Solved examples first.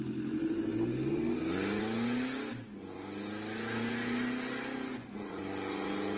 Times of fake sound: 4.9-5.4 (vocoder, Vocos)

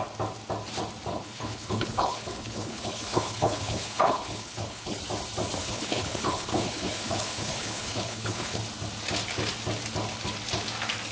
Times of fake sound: 1.1-5.0 (codec, HILCodec); 5.6-8.6